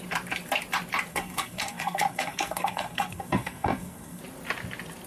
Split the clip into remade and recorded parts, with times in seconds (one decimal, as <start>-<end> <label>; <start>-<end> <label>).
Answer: 0.0-1.1 recorded; 1.1-4.2 remade; 4.2-5.1 recorded